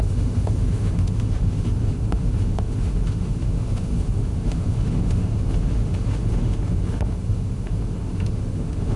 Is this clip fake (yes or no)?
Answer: yes